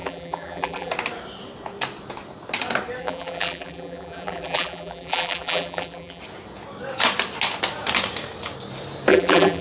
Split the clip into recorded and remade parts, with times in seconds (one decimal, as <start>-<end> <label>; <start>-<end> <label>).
0.0-0.9 remade; 0.9-3.0 recorded; 3.0-6.2 remade; 6.2-9.1 recorded; 9.1-9.6 remade